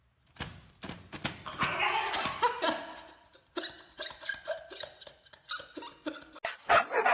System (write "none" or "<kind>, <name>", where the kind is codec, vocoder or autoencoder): none